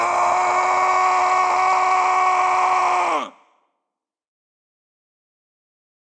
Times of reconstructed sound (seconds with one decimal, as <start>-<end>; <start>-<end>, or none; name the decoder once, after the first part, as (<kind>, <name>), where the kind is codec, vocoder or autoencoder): none